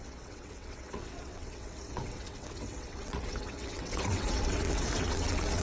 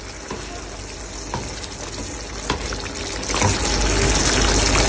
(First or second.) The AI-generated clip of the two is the first